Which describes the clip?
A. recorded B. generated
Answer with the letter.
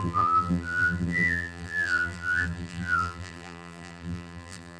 B